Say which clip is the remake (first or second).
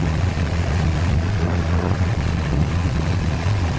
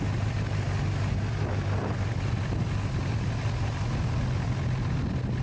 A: first